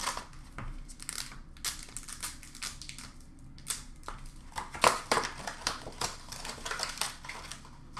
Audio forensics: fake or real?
real